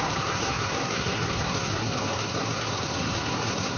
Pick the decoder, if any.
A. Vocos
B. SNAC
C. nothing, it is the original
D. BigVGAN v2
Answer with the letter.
B